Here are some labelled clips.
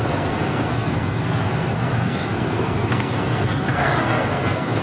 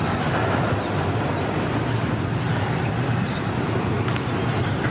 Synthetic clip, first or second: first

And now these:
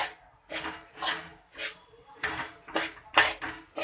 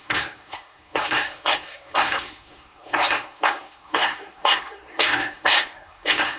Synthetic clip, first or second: second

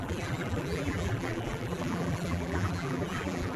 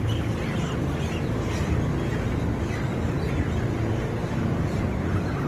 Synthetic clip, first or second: first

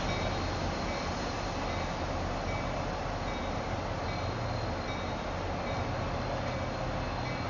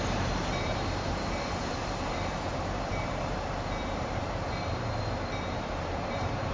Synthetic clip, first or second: second